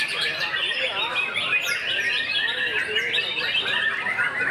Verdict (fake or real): real